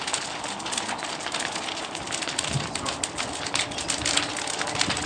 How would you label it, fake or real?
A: real